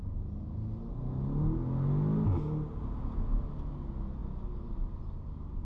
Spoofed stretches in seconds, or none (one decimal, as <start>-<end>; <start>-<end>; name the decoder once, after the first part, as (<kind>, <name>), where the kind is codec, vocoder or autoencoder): none